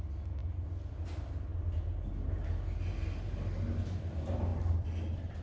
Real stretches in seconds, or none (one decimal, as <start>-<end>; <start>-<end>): 0.0-5.4